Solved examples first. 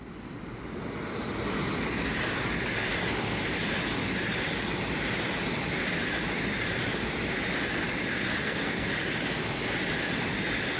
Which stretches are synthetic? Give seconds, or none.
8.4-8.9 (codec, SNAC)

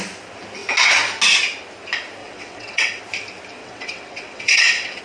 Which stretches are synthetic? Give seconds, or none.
2.2-3.0 (vocoder, WaveNeXt); 3.6-5.0

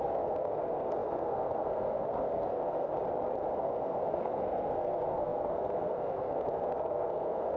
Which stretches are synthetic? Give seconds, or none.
0.0-2.9 (codec, SNAC); 3.5-7.6

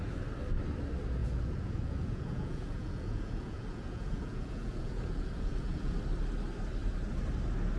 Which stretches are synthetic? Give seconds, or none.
1.2-5.9 (vocoder, Vocos)

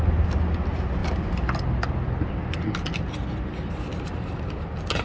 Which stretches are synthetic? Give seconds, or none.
none